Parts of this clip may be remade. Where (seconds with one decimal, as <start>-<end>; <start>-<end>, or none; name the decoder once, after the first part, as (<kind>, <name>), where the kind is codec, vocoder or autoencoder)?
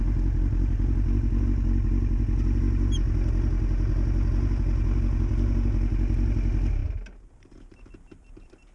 none